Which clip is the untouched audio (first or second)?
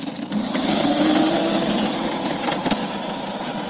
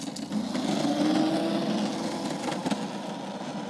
second